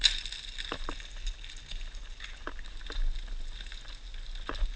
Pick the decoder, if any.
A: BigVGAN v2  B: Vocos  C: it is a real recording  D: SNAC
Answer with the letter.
C